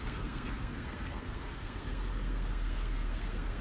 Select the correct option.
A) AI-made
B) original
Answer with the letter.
A